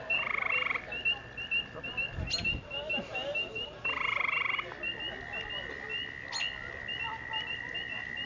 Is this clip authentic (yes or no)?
yes